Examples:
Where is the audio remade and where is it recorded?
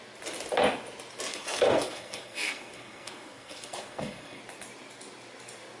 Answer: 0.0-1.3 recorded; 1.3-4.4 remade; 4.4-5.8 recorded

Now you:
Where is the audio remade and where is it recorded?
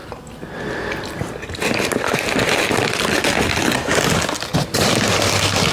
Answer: 0.0-5.7 recorded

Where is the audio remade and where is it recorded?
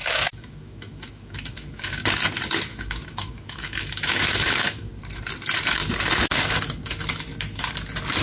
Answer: 0.0-1.9 remade; 1.9-2.7 recorded; 2.7-4.9 remade; 4.9-8.2 recorded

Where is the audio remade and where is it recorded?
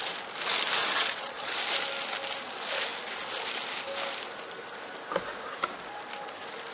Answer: 0.0-0.8 recorded; 0.8-1.6 remade; 1.6-6.7 recorded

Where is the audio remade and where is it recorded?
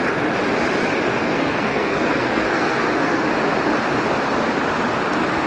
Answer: 0.0-1.2 recorded; 1.2-3.2 remade; 3.2-5.5 recorded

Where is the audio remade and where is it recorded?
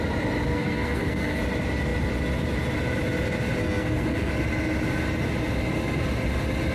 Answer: 0.0-0.5 recorded; 0.5-1.4 remade; 1.4-3.6 recorded; 3.6-4.3 remade; 4.3-6.7 recorded